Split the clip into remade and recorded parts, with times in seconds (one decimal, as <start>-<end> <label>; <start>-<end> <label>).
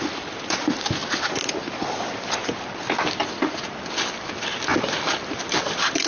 0.0-1.0 remade; 1.0-4.0 recorded; 4.0-6.1 remade